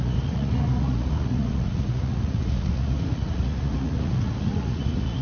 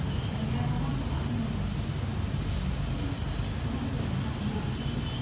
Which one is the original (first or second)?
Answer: second